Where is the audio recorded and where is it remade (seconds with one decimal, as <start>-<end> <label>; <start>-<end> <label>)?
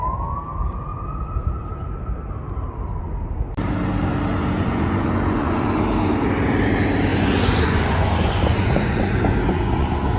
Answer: 0.0-4.4 recorded; 4.4-5.8 remade; 5.8-7.1 recorded; 7.1-10.2 remade